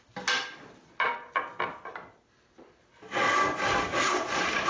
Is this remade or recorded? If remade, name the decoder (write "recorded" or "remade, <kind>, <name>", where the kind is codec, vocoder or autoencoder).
recorded